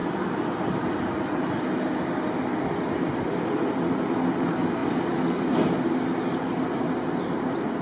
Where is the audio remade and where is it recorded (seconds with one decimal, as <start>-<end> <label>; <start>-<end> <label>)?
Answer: 0.0-7.8 recorded